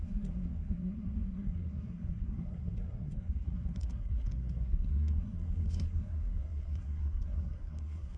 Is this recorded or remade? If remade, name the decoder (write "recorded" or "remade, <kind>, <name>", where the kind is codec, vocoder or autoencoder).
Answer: remade, codec, SNAC